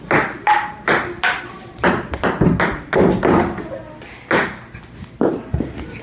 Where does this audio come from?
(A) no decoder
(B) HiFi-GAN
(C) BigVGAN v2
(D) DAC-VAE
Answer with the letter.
A